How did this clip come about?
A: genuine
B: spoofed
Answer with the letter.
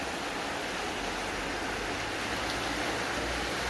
A